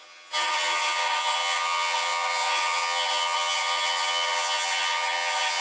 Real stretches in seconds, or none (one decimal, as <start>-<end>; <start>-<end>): none